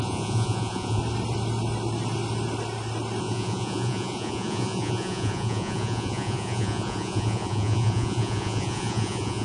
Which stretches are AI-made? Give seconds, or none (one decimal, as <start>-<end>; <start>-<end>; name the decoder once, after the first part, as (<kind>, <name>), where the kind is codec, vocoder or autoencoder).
0.0-1.0 (vocoder, Vocos); 3.2-9.4